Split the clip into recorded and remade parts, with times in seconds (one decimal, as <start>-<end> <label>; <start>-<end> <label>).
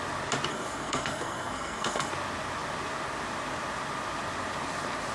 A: 0.0-0.5 recorded; 0.5-2.1 remade; 2.1-5.1 recorded